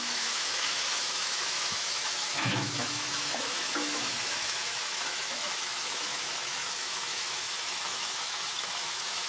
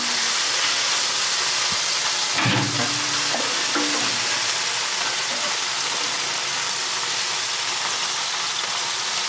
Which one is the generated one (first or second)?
first